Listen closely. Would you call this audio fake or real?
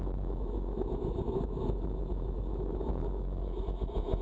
fake